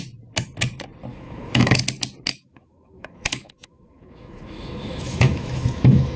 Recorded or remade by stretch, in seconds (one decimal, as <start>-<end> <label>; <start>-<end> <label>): 0.0-1.1 recorded; 1.1-1.8 remade; 1.8-2.3 recorded; 2.3-6.2 remade